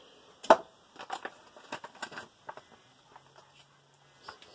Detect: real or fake real